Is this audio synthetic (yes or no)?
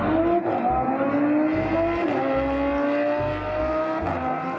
no